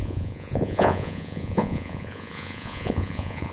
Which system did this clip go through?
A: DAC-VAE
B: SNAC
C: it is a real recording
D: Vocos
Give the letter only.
D